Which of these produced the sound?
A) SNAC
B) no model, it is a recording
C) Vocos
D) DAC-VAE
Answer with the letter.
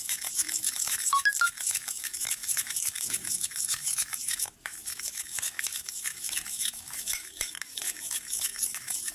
D